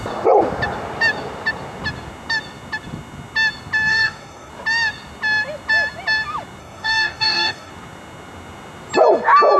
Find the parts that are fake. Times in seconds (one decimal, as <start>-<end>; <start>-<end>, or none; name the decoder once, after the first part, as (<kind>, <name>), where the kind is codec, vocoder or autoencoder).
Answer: 3.9-4.5 (codec, DAC); 6.6-7.7